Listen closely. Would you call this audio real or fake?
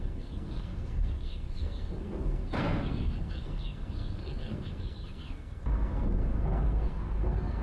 fake